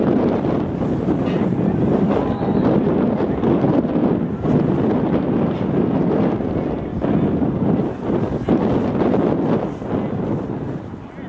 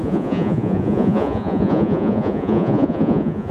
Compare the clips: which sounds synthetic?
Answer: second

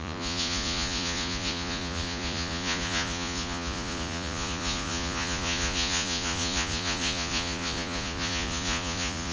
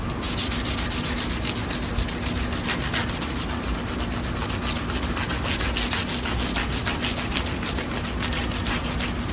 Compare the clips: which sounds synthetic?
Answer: first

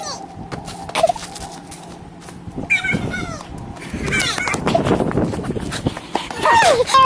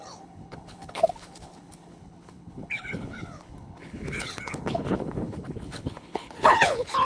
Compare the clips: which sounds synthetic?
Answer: second